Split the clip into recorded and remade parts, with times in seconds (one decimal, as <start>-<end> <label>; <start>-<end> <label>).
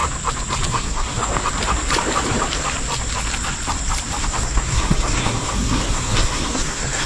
0.0-0.7 recorded; 0.7-1.3 remade; 1.3-4.3 recorded; 4.3-7.1 remade